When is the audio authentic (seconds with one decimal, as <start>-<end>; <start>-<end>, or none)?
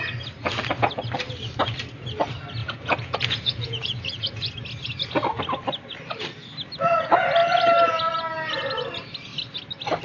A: 0.0-2.6; 4.5-10.0